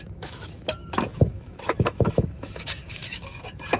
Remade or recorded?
remade